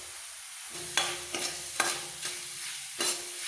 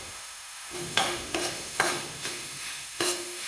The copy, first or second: second